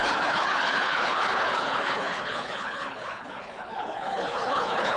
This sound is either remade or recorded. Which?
remade